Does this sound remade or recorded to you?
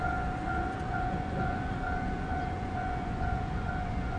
remade